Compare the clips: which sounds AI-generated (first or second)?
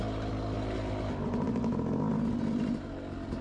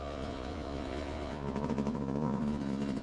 second